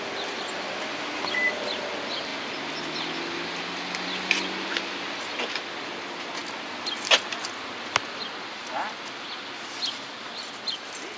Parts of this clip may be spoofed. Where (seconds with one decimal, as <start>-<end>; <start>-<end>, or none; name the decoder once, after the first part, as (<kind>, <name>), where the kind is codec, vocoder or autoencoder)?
none